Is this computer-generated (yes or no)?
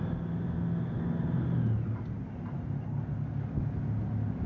no